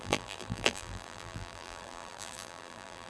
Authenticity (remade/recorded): remade